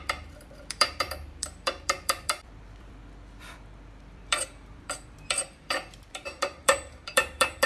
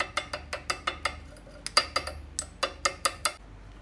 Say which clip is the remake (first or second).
first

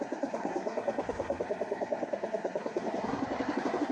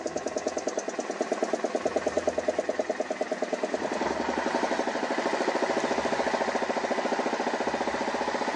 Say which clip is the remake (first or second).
first